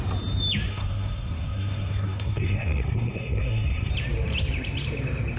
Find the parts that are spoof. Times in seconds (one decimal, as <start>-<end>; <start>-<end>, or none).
0.7-3.9